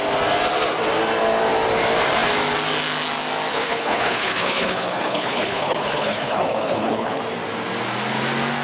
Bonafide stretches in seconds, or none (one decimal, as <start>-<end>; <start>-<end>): 0.0-3.5; 7.2-8.6